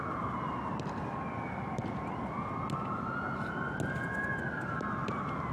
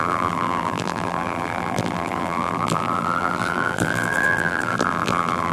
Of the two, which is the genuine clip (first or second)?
first